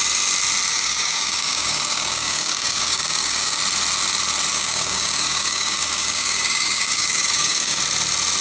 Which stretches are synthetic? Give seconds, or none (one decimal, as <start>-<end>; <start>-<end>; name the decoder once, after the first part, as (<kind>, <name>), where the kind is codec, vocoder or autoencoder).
0.7-3.6 (codec, DAC); 4.5-7.8